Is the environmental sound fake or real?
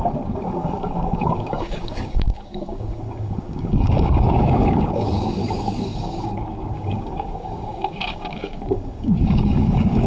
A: fake